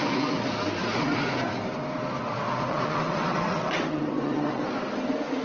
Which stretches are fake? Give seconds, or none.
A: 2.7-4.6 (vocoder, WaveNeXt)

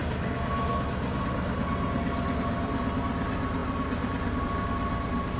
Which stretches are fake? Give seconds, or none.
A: none

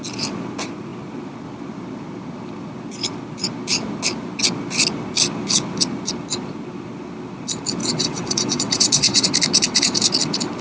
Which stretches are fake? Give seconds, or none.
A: 7.8-9.3 (vocoder, WaveNeXt)

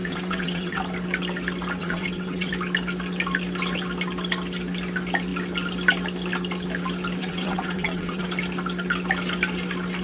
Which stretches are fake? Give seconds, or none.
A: 0.0-0.8 (vocoder, WaveNeXt); 1.8-2.5; 7.2-8.2